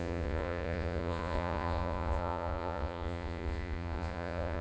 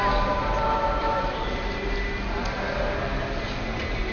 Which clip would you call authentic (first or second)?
second